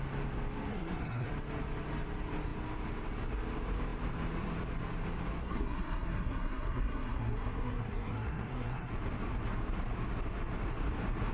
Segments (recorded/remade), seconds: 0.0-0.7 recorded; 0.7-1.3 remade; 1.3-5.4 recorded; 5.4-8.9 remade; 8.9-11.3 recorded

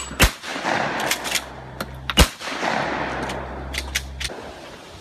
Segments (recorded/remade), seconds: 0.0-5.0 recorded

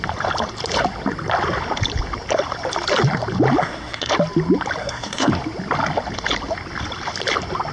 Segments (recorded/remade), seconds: 0.0-3.6 recorded; 3.6-4.1 remade; 4.1-4.8 recorded; 4.8-5.3 remade; 5.3-7.7 recorded

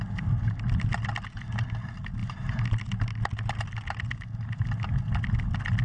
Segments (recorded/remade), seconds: 0.0-5.8 recorded

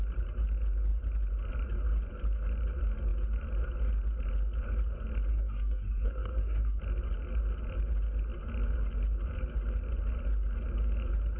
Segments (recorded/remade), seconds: 0.0-5.3 recorded; 5.3-6.8 remade; 6.8-11.4 recorded

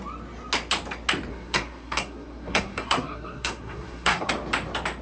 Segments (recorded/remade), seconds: 0.0-1.3 recorded; 1.3-4.3 remade; 4.3-5.0 recorded

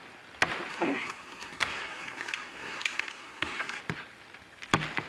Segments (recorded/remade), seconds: 0.0-0.7 recorded; 0.7-3.8 remade; 3.8-5.1 recorded

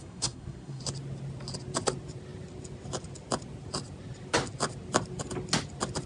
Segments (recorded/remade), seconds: 0.0-0.8 remade; 0.8-6.1 recorded